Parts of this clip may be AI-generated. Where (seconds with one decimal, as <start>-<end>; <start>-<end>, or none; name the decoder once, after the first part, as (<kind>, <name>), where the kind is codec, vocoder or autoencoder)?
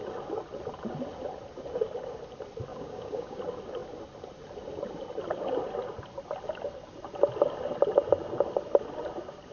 2.7-3.4 (codec, DAC)